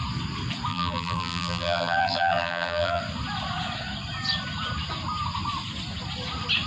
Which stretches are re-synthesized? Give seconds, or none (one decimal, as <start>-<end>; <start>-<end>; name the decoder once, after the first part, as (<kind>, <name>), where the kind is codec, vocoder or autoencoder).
0.7-3.0 (vocoder, BigVGAN v2)